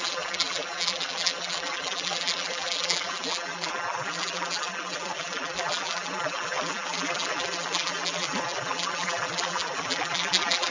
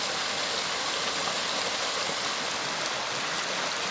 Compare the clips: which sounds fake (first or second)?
first